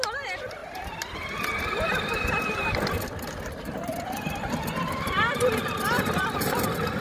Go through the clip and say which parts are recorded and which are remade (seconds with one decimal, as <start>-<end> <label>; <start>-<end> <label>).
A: 0.0-7.0 recorded